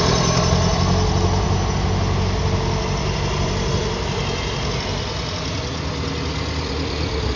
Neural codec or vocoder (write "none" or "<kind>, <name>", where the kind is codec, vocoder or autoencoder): none